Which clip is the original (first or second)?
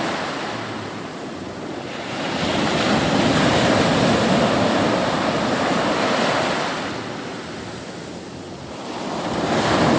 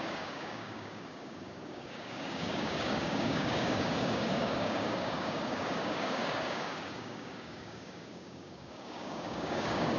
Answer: first